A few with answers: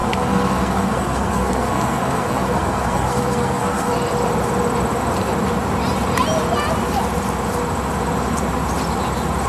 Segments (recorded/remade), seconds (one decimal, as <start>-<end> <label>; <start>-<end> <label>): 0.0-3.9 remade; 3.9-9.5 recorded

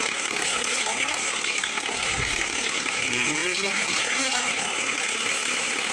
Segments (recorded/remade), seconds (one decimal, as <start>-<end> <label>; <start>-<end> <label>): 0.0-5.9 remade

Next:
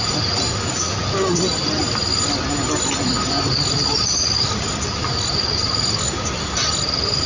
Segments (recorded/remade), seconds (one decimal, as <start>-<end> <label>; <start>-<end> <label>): 0.0-7.3 recorded

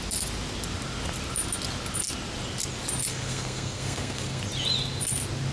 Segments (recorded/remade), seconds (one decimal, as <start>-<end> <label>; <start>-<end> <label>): 0.0-3.1 recorded; 3.1-4.4 remade; 4.4-5.5 recorded

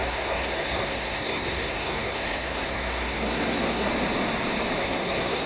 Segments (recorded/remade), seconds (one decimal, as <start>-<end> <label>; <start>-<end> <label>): 0.0-3.9 remade; 3.9-4.8 recorded; 4.8-5.5 remade

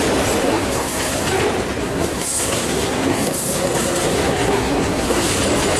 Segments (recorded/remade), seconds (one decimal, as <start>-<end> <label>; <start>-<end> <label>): 0.0-0.4 recorded; 0.4-1.2 remade; 1.2-1.8 recorded; 1.8-5.3 remade; 5.3-5.8 recorded

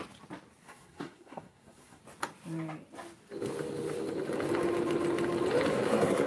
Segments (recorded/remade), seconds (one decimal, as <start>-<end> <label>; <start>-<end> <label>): 0.0-0.6 recorded; 0.6-2.0 remade; 2.0-5.7 recorded; 5.7-6.3 remade